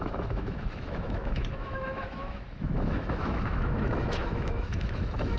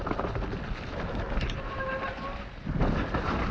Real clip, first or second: second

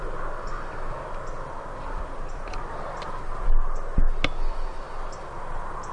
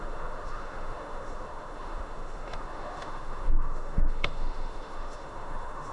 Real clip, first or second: first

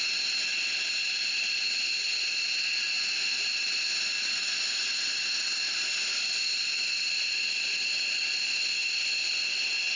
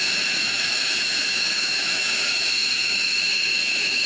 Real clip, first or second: first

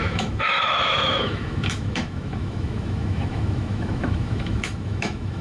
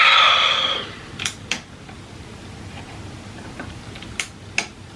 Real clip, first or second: second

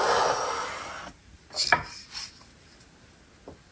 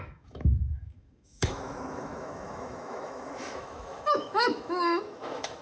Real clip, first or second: first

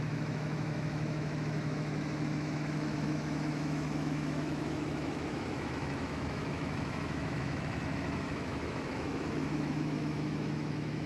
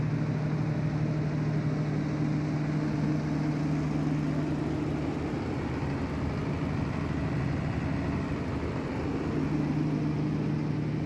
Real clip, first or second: second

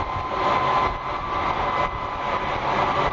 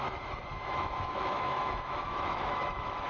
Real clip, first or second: first